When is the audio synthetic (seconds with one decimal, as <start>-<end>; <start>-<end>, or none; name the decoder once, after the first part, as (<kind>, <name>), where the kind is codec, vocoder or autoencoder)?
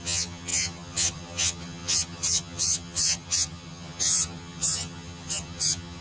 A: 0.0-6.0 (vocoder, HiFi-GAN)